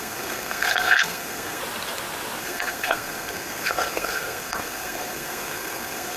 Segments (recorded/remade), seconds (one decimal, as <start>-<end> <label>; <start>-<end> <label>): 0.0-1.6 remade; 1.6-2.4 recorded; 2.4-6.2 remade